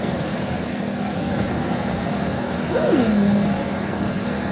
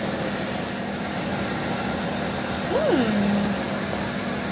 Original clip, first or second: second